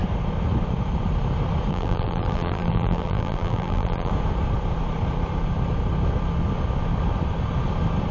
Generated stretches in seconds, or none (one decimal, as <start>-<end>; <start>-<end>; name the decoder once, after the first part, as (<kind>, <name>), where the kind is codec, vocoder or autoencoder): 1.7-4.1 (vocoder, BigVGAN v2)